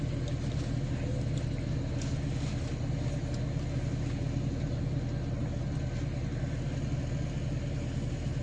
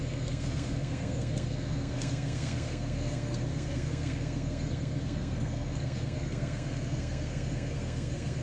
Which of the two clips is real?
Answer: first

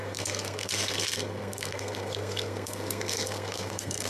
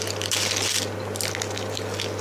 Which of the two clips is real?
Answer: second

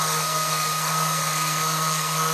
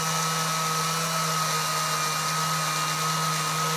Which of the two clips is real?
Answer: second